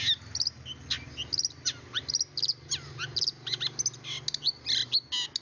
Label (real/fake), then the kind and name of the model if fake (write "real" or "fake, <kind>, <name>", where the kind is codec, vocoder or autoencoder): real